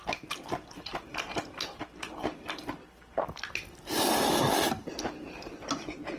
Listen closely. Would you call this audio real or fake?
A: real